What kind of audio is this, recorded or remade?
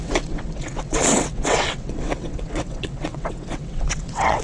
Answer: remade